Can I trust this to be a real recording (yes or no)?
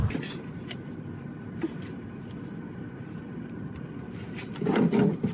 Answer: no